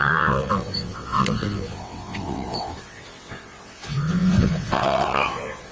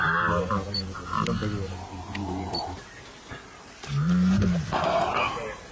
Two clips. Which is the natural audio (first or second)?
second